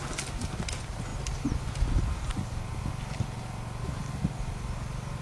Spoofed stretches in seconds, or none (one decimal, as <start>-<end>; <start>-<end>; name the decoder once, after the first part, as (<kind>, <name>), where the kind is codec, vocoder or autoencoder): none